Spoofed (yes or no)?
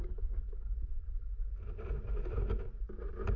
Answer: no